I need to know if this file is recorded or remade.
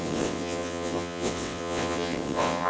remade